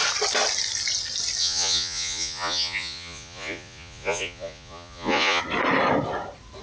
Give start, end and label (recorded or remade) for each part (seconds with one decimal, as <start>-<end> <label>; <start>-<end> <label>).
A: 0.0-1.4 recorded; 1.4-5.4 remade; 5.4-6.6 recorded